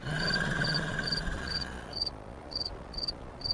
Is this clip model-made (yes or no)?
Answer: yes